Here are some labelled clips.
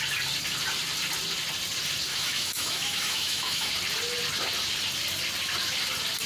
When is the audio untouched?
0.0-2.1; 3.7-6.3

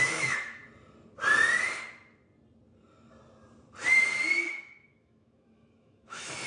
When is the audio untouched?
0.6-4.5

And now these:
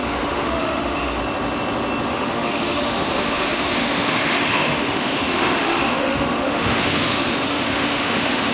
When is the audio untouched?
1.2-2.1